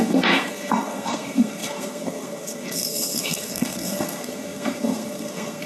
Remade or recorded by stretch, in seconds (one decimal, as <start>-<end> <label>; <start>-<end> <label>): 0.0-5.7 remade